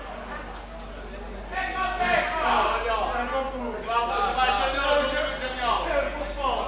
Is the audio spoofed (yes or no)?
no